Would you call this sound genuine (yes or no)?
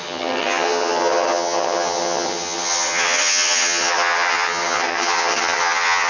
no